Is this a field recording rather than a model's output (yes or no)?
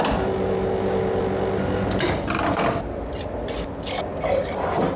yes